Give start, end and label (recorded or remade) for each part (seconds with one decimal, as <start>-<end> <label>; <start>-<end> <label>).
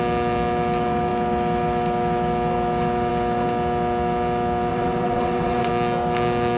0.0-4.7 recorded; 4.7-5.7 remade; 5.7-6.6 recorded